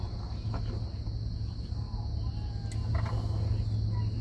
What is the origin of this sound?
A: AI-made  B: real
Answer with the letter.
B